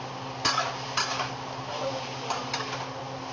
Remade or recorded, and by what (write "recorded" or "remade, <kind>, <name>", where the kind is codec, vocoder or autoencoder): recorded